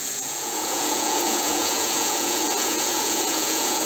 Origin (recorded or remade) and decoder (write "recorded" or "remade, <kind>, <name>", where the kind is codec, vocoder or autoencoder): remade, vocoder, Vocos